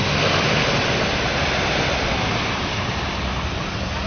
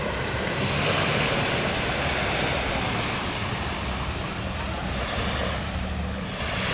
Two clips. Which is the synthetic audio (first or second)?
first